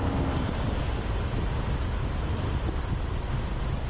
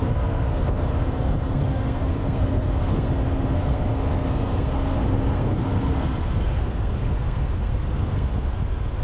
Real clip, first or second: first